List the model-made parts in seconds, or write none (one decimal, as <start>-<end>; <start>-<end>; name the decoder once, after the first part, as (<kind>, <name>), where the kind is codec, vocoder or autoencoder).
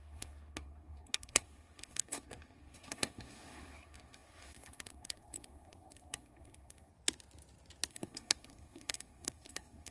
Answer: 0.0-6.9 (codec, SNAC); 7.9-9.9